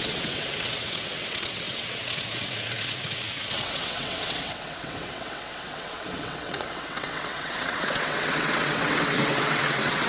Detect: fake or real fake